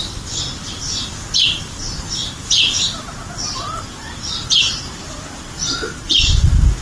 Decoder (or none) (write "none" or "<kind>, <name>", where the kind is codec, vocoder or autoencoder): none